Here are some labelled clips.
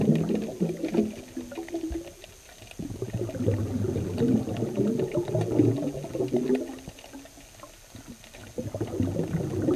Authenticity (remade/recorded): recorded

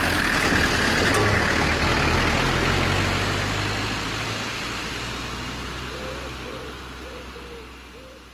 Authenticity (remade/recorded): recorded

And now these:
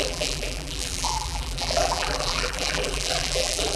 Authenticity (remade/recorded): remade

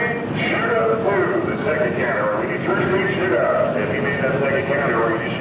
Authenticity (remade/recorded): recorded